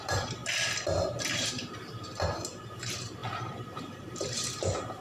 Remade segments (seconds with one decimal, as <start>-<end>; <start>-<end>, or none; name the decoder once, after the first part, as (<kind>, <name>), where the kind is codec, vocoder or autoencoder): 0.0-0.4 (vocoder, BigVGAN v2); 1.0-5.0